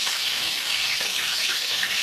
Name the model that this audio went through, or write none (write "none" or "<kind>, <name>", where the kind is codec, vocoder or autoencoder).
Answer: codec, DAC